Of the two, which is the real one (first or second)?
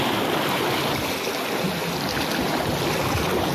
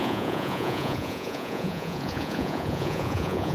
first